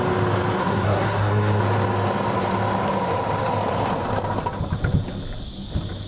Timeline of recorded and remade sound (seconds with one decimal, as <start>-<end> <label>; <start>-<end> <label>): 0.0-0.6 recorded; 0.6-1.6 remade; 1.6-6.1 recorded